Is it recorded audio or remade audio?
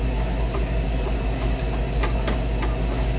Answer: recorded